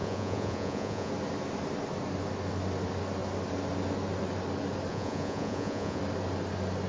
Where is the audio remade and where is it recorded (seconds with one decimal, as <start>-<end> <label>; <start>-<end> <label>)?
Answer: 0.0-1.1 remade; 1.1-4.9 recorded; 4.9-6.0 remade; 6.0-6.9 recorded